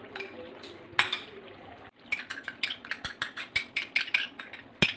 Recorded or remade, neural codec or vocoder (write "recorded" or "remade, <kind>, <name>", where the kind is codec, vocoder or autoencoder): recorded